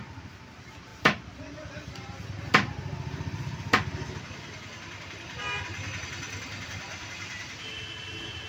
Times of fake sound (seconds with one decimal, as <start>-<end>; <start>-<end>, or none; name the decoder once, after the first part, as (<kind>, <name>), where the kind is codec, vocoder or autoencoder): 6.9-7.6 (vocoder, BigVGAN v2)